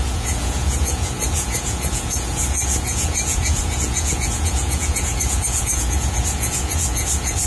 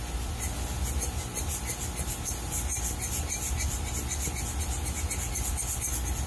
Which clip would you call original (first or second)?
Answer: second